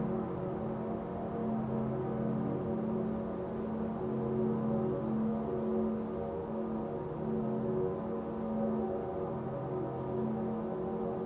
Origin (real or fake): real